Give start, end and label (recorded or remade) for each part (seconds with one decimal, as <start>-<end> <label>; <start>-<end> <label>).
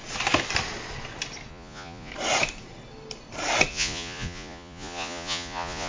0.0-1.5 recorded; 1.5-2.1 remade; 2.1-3.7 recorded; 3.7-5.9 remade